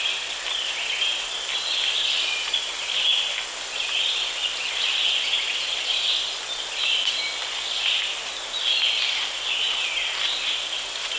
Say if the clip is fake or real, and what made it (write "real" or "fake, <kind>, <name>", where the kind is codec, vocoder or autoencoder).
real